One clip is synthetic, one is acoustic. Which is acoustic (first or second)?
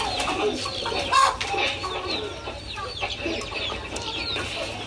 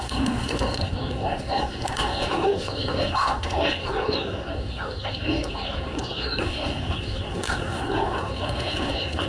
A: first